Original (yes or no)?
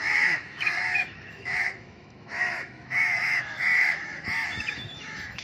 no